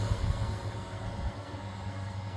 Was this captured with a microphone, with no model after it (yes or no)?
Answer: no